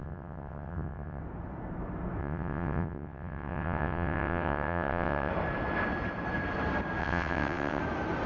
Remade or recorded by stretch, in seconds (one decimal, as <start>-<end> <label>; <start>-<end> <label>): 0.0-1.2 remade; 1.2-2.2 recorded; 2.2-5.3 remade; 5.3-7.0 recorded; 7.0-7.8 remade; 7.8-8.3 recorded